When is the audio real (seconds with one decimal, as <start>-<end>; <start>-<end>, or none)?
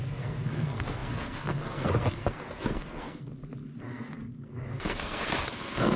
3.3-3.8